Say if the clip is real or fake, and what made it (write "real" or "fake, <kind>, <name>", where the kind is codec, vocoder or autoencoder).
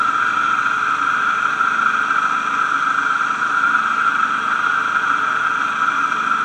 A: real